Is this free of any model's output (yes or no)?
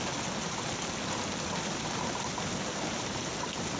yes